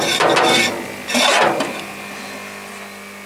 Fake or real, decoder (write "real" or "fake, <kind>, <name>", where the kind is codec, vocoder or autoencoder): real